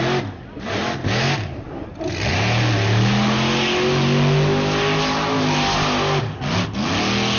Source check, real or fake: real